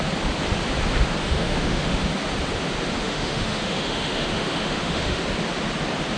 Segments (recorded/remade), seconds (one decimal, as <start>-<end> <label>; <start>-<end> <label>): 0.0-1.2 recorded; 1.2-2.1 remade; 2.1-3.0 recorded; 3.0-5.2 remade; 5.2-6.2 recorded